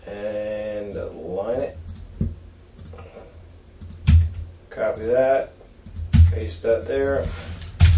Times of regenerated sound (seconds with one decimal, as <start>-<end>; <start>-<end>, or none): none